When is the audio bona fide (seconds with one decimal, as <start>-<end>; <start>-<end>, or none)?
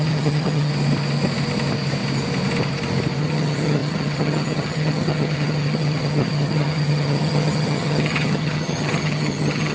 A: 0.7-3.2